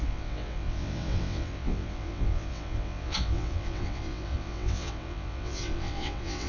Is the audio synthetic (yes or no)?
yes